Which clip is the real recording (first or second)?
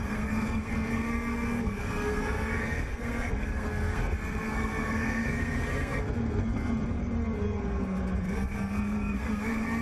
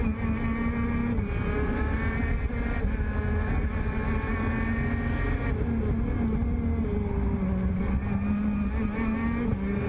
second